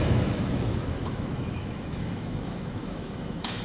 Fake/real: fake